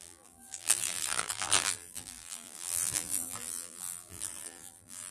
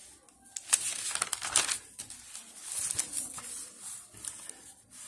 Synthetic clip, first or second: first